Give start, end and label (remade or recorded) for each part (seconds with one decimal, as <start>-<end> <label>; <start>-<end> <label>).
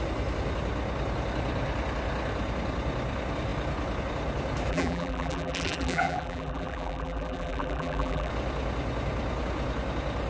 0.0-4.7 recorded; 4.7-8.3 remade; 8.3-10.3 recorded